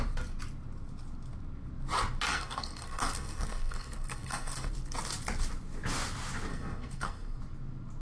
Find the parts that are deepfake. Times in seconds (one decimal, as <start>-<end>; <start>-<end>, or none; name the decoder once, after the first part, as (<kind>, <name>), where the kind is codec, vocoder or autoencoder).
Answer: 2.3-4.7 (codec, SNAC); 6.5-7.4